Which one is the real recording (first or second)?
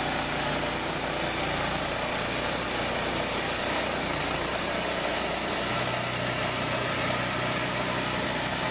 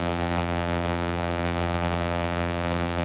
first